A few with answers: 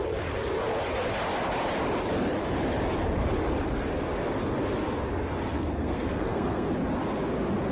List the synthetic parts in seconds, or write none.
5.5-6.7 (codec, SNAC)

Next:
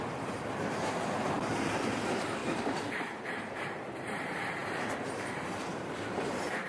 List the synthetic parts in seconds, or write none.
0.0-6.7 (vocoder, BigVGAN v2)